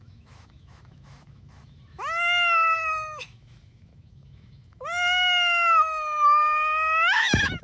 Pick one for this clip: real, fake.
fake